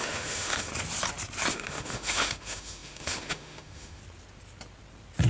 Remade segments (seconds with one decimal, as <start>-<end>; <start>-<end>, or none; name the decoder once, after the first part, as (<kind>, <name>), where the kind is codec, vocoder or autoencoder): 0.0-0.7 (autoencoder, DAC-VAE); 1.5-4.0